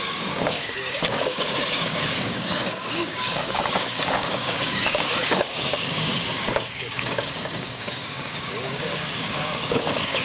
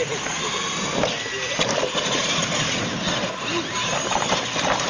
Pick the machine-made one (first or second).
first